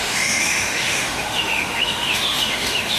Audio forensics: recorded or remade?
remade